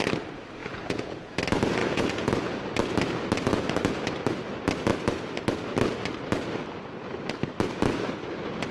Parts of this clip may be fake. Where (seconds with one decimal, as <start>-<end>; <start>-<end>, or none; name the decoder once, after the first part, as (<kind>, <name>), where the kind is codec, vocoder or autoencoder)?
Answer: 0.6-1.3 (vocoder, Vocos); 1.8-2.3